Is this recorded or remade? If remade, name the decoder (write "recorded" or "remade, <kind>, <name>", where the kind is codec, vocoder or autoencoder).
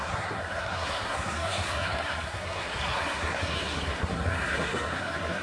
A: remade, codec, SNAC